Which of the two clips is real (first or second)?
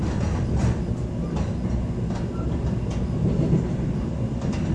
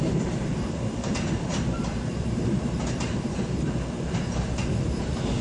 first